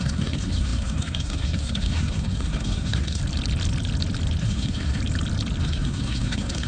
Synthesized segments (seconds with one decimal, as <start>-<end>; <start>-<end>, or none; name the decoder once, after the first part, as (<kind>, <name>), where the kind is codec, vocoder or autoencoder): 0.0-3.2 (codec, SNAC); 4.4-5.0; 5.6-6.7

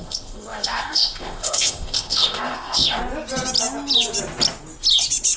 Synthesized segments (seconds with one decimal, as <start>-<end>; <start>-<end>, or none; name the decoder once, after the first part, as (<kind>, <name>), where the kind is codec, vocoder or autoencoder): 0.0-3.0 (codec, ZipCodec)